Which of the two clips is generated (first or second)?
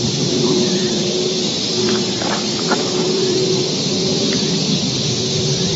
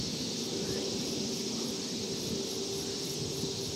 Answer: first